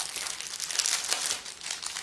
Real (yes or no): yes